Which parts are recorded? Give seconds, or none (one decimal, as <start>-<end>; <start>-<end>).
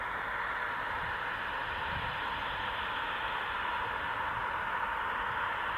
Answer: 0.0-5.8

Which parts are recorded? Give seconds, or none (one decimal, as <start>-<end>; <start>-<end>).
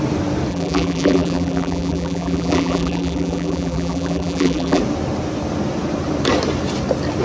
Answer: 0.0-0.5; 4.8-7.2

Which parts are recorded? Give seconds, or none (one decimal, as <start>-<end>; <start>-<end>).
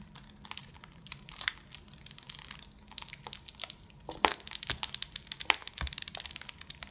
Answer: 0.0-0.6; 1.5-5.6; 6.2-6.9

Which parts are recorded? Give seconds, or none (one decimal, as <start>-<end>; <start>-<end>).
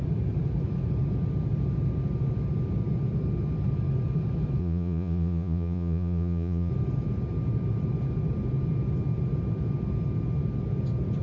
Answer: 0.0-4.6; 6.7-11.2